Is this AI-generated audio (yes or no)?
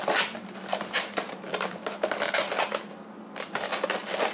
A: no